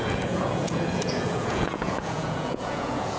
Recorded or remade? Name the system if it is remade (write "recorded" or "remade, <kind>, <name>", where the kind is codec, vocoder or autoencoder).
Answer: remade, vocoder, Vocos